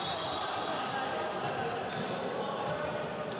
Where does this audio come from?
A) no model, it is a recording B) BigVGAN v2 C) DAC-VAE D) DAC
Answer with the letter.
A